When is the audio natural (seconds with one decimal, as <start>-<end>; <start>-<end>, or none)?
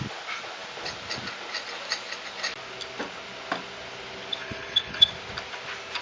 0.0-4.4; 5.1-6.0